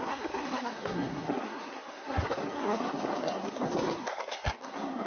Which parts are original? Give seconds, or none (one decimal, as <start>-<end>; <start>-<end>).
none

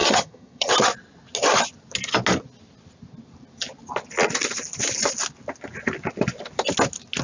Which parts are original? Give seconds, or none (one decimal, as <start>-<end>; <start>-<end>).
0.7-7.2

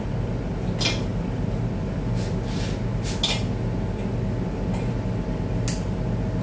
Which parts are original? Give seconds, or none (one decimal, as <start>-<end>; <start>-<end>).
0.0-6.4

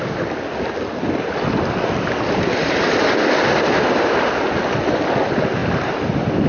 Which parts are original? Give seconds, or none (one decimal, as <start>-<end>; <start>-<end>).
0.0-6.5

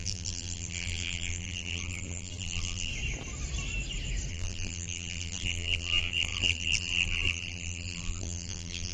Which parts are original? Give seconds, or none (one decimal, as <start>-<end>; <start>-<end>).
2.9-4.3

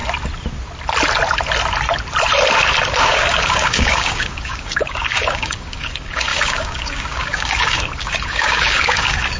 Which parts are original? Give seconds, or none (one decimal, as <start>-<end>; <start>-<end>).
0.0-3.0